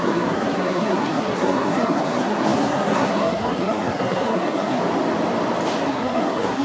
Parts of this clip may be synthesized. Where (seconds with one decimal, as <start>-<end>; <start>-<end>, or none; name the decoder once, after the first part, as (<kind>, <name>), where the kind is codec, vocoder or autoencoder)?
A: 0.0-4.8 (codec, SNAC); 5.9-6.6